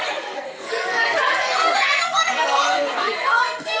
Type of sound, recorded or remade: remade